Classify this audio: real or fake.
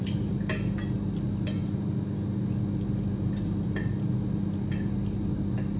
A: real